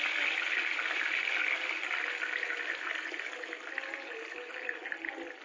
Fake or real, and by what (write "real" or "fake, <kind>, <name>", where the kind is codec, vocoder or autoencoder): real